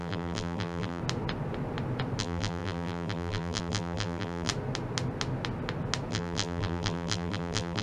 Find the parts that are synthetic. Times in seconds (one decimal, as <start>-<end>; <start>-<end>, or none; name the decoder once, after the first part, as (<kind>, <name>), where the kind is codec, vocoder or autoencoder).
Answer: 0.0-1.0 (vocoder, BigVGAN v2); 2.2-4.5; 6.1-7.8